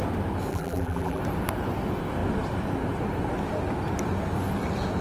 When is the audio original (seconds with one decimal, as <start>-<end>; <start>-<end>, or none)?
0.0-0.5; 1.2-5.0